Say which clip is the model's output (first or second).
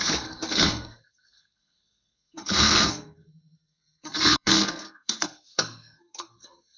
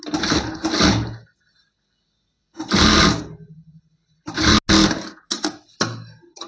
first